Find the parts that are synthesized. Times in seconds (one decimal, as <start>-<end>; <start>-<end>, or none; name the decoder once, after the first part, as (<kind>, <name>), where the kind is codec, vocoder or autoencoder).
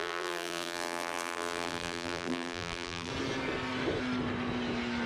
0.0-3.1 (vocoder, BigVGAN v2)